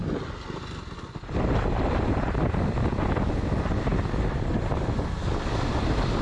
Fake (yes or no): no